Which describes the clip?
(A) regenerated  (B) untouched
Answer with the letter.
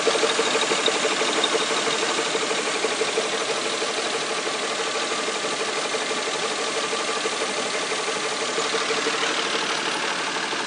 B